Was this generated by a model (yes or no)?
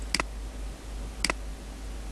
no